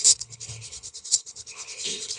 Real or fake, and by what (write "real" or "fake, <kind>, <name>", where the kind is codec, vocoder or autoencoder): fake, codec, HILCodec